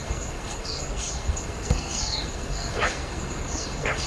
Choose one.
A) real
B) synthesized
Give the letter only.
B